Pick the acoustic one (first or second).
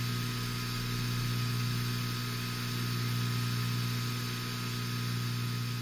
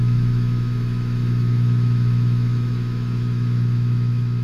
first